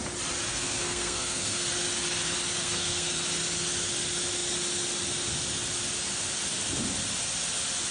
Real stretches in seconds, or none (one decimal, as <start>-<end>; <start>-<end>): 0.0-0.5; 1.7-2.6; 3.1-7.9